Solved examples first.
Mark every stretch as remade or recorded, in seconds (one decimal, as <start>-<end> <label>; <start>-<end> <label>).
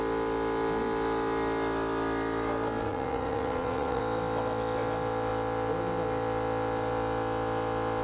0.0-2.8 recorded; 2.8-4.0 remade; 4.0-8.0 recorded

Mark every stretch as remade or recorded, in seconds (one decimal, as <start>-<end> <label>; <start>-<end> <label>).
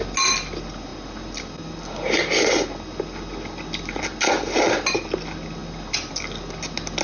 0.0-7.0 recorded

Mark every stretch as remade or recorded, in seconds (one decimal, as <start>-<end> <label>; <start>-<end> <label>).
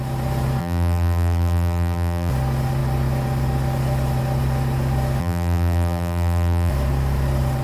0.0-0.6 recorded; 0.6-2.3 remade; 2.3-5.2 recorded; 5.2-6.7 remade; 6.7-7.6 recorded